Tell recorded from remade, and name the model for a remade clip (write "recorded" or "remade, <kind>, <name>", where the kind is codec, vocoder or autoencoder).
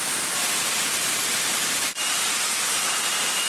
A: remade, vocoder, BigVGAN v2